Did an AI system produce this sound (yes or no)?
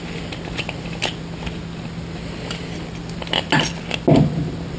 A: no